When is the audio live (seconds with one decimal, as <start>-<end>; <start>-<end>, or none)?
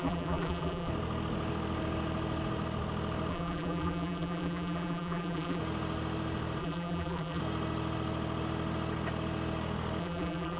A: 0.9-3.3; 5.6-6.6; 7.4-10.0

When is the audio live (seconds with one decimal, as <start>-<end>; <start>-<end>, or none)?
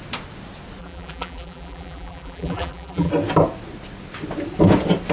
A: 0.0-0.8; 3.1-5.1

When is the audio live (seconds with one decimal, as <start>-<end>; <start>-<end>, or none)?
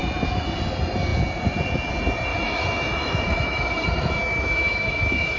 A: 0.0-2.3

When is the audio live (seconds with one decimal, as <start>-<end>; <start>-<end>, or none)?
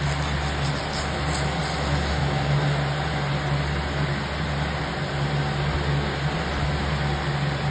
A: 0.0-7.7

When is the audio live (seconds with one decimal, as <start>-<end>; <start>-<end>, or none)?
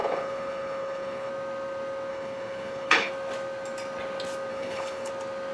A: 1.3-2.1; 3.1-4.5; 5.1-5.5